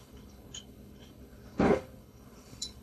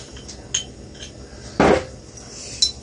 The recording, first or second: second